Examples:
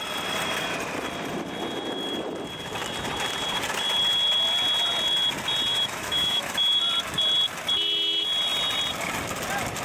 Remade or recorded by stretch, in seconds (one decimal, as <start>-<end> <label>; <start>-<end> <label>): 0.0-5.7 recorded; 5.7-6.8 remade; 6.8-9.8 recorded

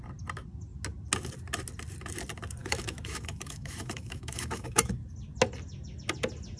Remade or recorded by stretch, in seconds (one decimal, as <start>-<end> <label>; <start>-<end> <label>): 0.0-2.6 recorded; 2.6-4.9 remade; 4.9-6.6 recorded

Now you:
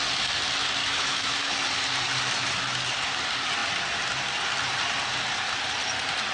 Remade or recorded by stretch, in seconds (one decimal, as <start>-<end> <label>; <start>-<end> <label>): 0.0-0.8 recorded; 0.8-1.5 remade; 1.5-6.3 recorded